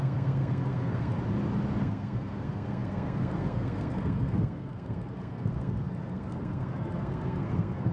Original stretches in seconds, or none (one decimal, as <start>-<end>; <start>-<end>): 1.1-1.8